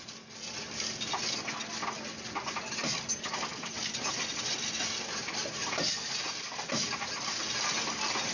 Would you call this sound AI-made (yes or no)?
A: no